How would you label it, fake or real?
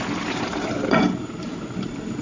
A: real